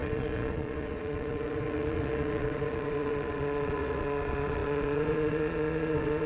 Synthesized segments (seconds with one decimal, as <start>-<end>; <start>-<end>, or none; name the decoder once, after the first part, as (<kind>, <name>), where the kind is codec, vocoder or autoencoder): 0.0-6.3 (vocoder, Vocos)